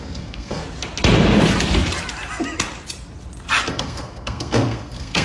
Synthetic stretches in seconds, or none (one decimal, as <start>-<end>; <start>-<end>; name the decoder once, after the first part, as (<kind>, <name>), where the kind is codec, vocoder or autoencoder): 0.0-0.6 (codec, SNAC); 3.7-5.2